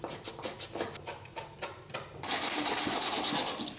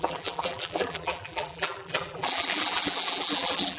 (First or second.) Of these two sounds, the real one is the first